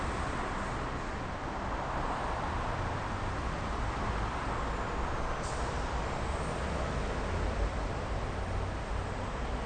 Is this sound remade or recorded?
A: recorded